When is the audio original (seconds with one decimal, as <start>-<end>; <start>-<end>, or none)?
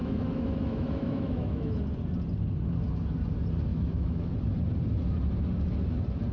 1.8-3.7; 4.3-6.3